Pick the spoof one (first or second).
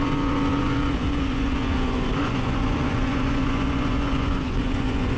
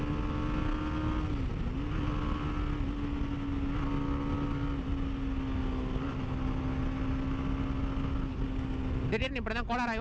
first